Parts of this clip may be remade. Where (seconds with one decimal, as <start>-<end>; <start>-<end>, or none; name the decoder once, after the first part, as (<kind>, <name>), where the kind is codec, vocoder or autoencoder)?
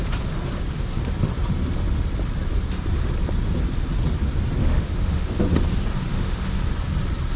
4.6-5.4 (autoencoder, DAC-VAE); 6.1-6.6